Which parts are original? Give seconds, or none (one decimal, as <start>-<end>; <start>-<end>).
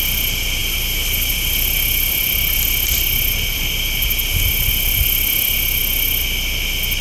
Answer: 0.0-7.0